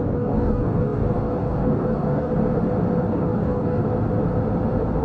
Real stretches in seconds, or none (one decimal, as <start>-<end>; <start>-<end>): 2.3-3.0; 3.8-5.0